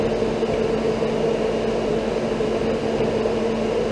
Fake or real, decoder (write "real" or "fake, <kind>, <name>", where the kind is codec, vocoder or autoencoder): real